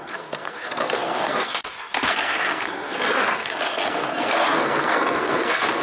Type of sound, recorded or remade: remade